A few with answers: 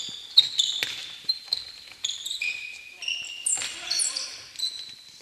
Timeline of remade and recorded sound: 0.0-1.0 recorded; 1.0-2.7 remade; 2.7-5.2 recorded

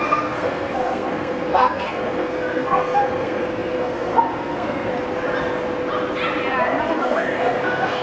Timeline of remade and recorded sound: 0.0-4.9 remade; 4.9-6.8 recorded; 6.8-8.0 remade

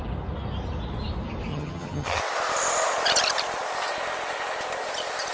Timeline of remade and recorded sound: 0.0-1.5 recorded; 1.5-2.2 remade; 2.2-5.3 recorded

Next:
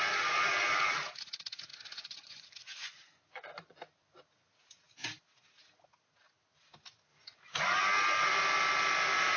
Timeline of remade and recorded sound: 0.0-1.7 recorded; 1.7-3.8 remade; 3.8-9.4 recorded